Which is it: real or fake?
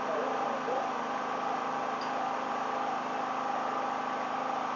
real